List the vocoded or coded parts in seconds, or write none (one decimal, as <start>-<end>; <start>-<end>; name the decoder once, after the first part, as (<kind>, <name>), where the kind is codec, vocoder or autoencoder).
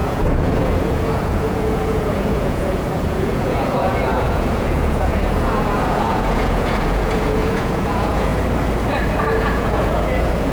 0.0-8.3 (vocoder, Vocos); 9.3-10.5